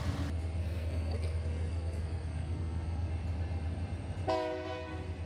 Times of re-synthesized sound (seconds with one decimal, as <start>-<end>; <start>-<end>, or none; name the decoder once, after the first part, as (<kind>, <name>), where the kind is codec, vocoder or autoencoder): 0.6-3.1 (codec, SNAC)